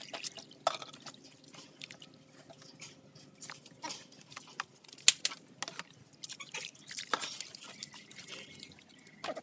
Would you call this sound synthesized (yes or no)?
no